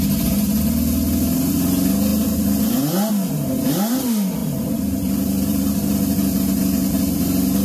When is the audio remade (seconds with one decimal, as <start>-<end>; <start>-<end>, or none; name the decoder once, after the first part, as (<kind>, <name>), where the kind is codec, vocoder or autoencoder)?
4.4-5.9 (vocoder, BigVGAN v2)